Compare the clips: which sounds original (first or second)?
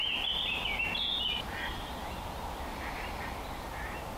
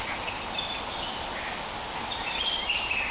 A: first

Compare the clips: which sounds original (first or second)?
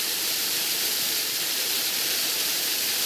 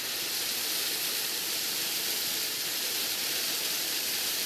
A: second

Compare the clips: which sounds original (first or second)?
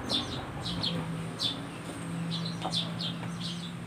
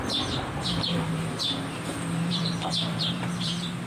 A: first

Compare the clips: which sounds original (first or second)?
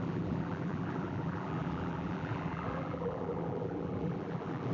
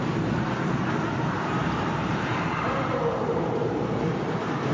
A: second